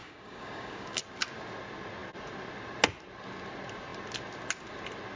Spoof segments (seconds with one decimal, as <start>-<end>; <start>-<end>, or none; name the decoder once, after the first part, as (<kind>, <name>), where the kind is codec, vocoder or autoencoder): 0.0-1.0 (codec, DAC)